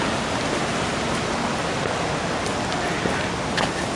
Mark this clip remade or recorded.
recorded